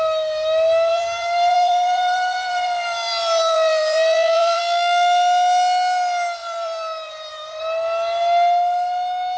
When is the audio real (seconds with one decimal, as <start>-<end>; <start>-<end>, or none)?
0.0-0.9; 4.6-6.4; 7.6-9.4